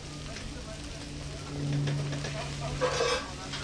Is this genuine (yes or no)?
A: yes